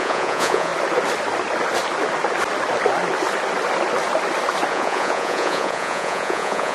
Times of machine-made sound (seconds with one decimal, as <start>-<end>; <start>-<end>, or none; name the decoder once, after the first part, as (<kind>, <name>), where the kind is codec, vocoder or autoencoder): 0.0-0.7 (vocoder, Vocos); 4.7-6.7